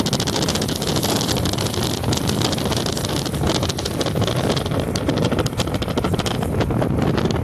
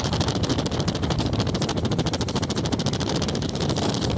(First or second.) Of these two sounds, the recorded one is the first